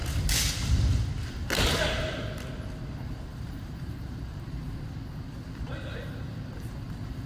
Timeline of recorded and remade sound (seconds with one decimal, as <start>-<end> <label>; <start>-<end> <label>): 0.0-3.3 recorded; 3.3-4.7 remade; 4.7-7.3 recorded